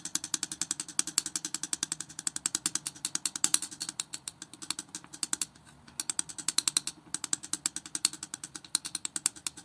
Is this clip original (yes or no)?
yes